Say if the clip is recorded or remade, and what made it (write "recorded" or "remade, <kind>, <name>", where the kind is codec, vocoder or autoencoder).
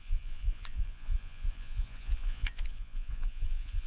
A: remade, vocoder, Vocos